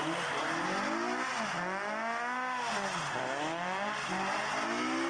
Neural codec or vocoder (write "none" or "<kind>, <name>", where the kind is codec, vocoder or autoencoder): none